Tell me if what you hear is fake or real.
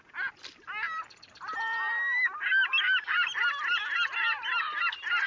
real